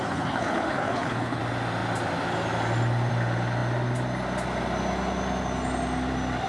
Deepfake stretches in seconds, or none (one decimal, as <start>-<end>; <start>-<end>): 0.0-1.4